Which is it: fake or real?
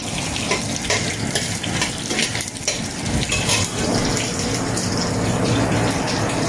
real